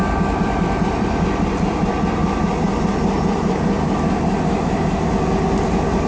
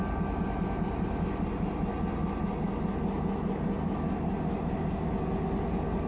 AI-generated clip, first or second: first